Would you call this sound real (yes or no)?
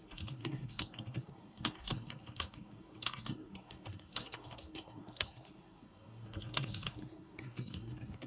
no